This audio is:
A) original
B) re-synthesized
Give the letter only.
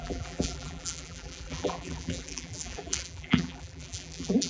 B